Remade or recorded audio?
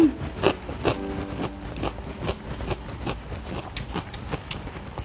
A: recorded